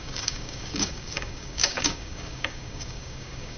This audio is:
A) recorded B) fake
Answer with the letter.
B